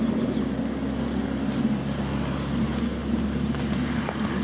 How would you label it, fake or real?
real